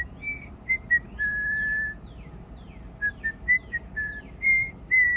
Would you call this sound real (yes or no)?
no